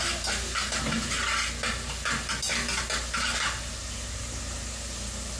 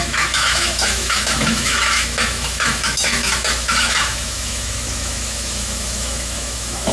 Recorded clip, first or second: first